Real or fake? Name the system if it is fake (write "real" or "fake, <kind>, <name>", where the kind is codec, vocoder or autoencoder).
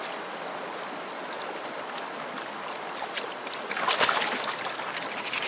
real